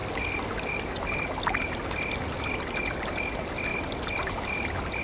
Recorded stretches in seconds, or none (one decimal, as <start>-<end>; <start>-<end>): 0.0-5.0